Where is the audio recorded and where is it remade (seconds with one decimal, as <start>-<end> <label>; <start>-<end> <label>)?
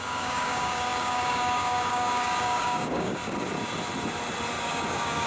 0.0-3.2 remade; 3.2-4.6 recorded; 4.6-5.3 remade